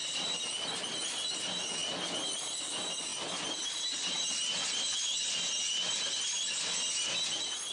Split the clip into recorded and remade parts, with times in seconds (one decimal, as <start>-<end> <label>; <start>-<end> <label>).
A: 0.0-7.7 recorded